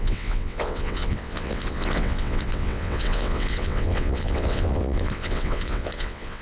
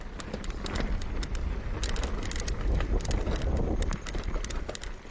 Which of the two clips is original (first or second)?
second